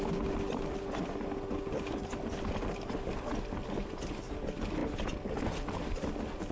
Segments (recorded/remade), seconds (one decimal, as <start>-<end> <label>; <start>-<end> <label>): 0.0-6.5 recorded